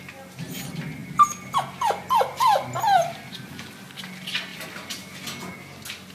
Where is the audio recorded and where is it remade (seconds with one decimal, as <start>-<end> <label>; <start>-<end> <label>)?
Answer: 0.0-6.1 recorded

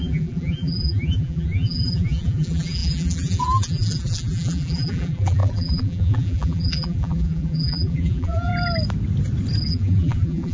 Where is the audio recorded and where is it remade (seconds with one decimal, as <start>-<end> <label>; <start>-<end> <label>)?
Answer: 0.0-8.5 remade; 8.5-9.7 recorded; 9.7-10.5 remade

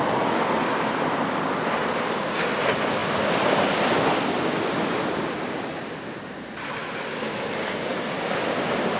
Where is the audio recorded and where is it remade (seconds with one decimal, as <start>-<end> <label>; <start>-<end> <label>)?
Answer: 0.0-9.0 recorded

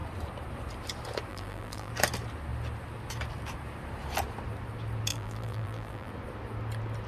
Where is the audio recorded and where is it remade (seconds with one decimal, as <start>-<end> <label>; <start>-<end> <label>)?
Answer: 0.0-1.3 recorded; 1.3-1.9 remade; 1.9-5.1 recorded; 5.1-6.1 remade; 6.1-7.1 recorded

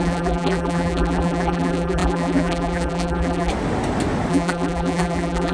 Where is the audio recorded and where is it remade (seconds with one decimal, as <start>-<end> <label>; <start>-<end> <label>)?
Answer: 0.0-3.5 remade; 3.5-4.3 recorded; 4.3-5.5 remade

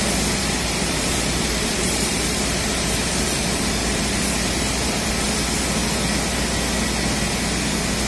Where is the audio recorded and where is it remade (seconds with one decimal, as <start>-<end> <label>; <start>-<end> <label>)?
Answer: 0.0-0.4 recorded; 0.4-5.1 remade; 5.1-8.1 recorded

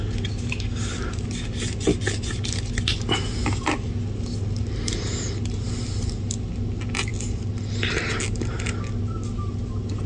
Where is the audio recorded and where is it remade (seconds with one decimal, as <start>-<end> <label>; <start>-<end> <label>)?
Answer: 0.0-10.1 recorded

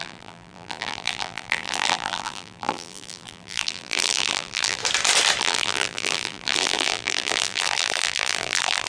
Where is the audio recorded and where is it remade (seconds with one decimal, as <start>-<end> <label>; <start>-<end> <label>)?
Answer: 0.0-4.8 remade; 4.8-5.4 recorded; 5.4-8.9 remade